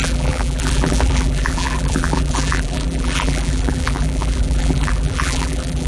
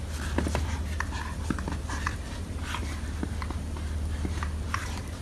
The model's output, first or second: first